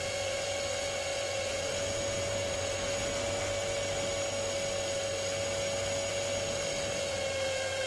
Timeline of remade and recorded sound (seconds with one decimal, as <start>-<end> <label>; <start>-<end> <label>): 0.0-3.0 remade; 3.0-6.1 recorded; 6.1-7.9 remade